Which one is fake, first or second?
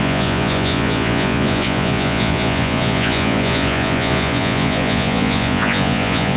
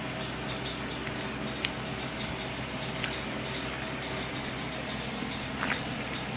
first